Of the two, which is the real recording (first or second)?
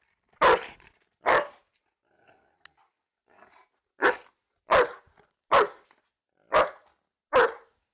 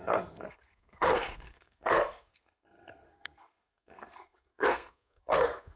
first